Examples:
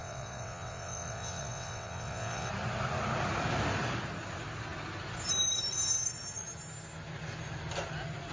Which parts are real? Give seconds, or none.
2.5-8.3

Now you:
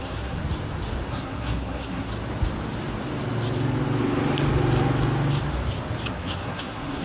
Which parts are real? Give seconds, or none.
0.4-1.1; 2.1-6.1

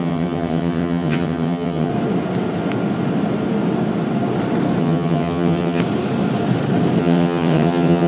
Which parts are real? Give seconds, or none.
1.9-4.8; 5.8-7.0